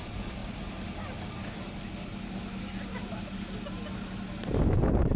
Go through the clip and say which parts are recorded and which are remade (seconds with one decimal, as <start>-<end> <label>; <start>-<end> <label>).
0.0-5.2 recorded